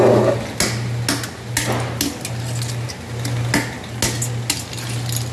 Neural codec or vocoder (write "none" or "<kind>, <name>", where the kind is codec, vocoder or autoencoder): none